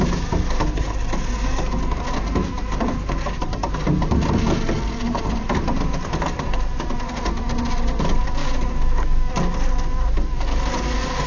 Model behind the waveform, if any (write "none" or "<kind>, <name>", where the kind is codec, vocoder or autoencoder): none